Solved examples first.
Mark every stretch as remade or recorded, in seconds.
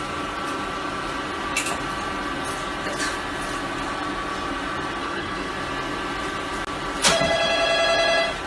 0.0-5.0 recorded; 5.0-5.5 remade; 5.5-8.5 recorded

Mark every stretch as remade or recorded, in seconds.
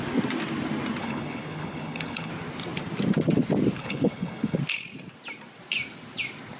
0.0-1.0 recorded; 1.0-2.3 remade; 2.3-3.8 recorded; 3.8-4.6 remade; 4.6-6.6 recorded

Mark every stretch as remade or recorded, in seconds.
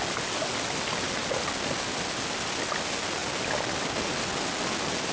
0.0-5.1 recorded